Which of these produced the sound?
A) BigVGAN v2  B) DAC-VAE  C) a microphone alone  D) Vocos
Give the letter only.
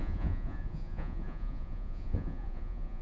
D